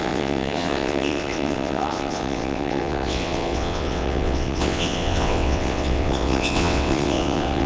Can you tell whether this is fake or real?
fake